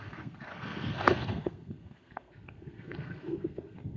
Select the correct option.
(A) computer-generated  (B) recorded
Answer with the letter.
A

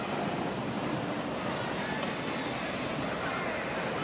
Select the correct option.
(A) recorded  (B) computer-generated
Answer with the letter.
A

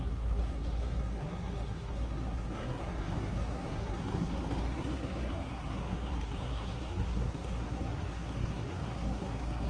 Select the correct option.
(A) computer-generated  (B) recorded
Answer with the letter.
A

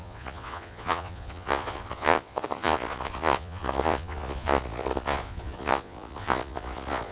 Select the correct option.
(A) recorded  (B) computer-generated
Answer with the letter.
B